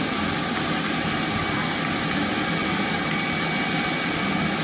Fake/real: real